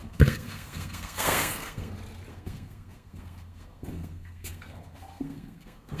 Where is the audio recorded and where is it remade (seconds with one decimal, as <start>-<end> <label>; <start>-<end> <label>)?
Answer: 0.0-1.9 remade; 1.9-2.3 recorded; 2.3-6.0 remade

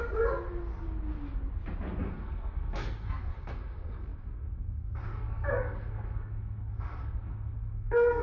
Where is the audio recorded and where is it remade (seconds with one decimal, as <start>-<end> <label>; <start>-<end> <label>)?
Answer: 0.0-2.0 recorded; 2.0-8.2 remade